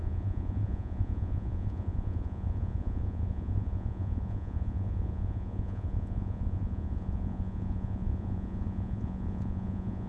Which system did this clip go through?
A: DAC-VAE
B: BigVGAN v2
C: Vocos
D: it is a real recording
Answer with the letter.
C